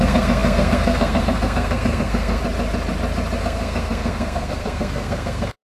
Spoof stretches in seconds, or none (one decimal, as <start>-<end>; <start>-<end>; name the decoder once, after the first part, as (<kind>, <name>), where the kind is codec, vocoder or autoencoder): 0.0-2.4 (codec, SNAC); 3.4-5.6

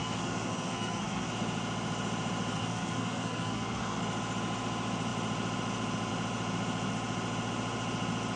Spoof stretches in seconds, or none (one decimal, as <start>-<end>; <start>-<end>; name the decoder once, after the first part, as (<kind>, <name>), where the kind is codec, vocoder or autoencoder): 0.0-1.3 (codec, SNAC); 2.5-4.0

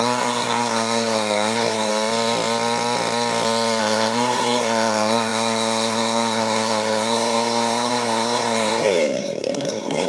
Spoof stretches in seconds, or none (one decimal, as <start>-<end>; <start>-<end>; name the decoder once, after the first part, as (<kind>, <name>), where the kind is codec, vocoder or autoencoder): 0.0-1.9 (codec, SNAC); 3.8-10.1

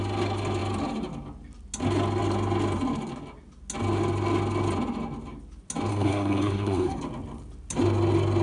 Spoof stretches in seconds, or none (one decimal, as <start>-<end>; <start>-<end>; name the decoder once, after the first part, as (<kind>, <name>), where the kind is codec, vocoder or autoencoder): 5.9-7.0 (codec, SNAC)

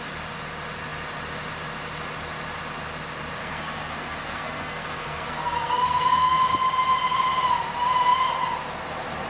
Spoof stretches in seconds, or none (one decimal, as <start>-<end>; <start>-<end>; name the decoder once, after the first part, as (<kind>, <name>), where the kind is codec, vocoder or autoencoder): 3.4-6.4 (codec, SNAC)